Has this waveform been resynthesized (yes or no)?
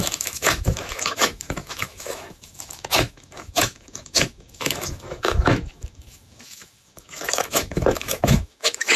yes